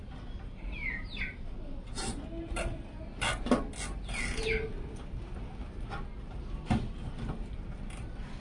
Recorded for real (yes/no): yes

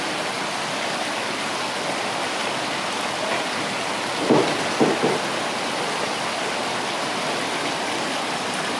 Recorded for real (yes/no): yes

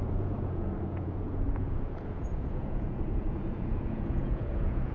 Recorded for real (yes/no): no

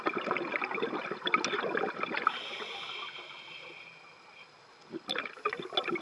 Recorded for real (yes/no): yes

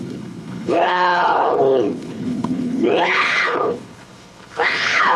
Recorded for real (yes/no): no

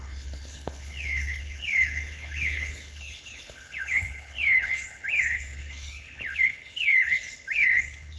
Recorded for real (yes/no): no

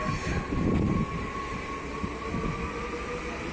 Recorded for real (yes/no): yes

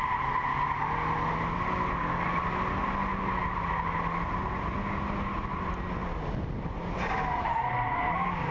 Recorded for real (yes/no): yes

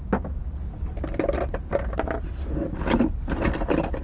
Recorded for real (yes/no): yes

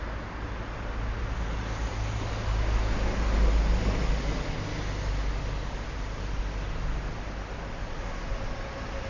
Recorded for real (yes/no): yes